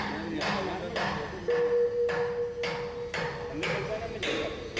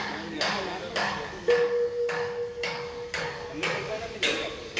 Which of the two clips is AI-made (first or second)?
second